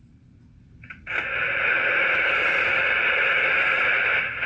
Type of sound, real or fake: fake